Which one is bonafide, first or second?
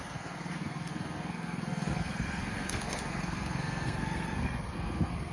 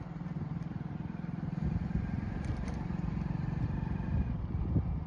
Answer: second